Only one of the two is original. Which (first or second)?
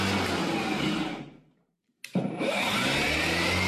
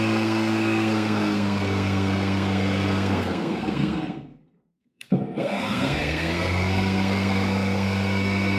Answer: first